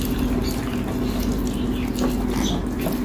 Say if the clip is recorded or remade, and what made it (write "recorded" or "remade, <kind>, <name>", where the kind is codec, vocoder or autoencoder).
recorded